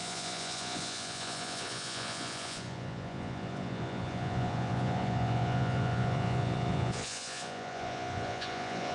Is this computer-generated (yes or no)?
yes